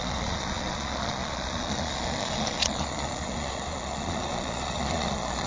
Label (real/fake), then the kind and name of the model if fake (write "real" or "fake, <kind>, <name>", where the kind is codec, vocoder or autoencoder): fake, vocoder, Vocos